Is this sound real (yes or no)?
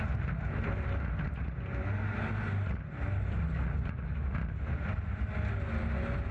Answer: yes